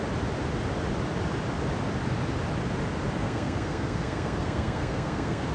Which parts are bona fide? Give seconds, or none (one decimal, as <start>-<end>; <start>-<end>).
0.0-3.2